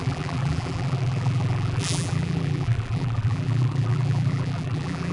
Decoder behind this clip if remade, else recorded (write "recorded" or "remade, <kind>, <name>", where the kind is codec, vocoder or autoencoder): remade, vocoder, BigVGAN v2